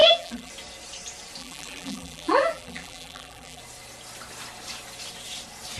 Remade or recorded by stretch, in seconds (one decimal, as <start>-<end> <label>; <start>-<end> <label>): 0.0-0.5 remade; 0.5-1.4 recorded; 1.4-3.6 remade; 3.6-5.8 recorded